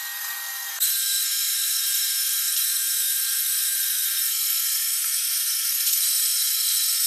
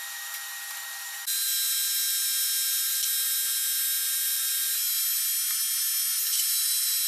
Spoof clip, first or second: first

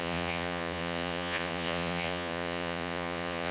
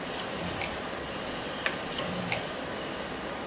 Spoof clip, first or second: first